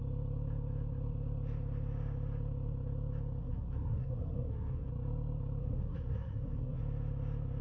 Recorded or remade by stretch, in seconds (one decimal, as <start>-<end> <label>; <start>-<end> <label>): 0.0-3.4 recorded; 3.4-4.9 remade; 4.9-5.6 recorded; 5.6-6.8 remade; 6.8-7.6 recorded